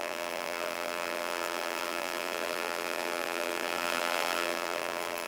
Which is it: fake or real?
fake